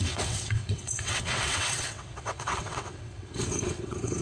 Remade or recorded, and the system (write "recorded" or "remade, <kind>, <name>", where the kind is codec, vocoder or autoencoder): remade, vocoder, WaveNeXt